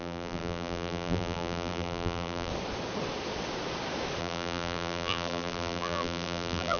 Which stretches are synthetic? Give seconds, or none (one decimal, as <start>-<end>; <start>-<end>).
0.0-2.5; 4.2-6.8